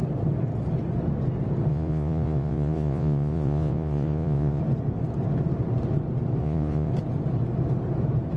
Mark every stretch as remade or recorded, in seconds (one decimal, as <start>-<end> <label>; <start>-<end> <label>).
0.0-1.7 recorded; 1.7-4.6 remade; 4.6-6.4 recorded; 6.4-6.9 remade; 6.9-8.4 recorded